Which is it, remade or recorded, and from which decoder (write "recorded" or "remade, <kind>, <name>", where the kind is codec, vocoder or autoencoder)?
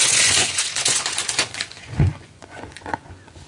remade, vocoder, Vocos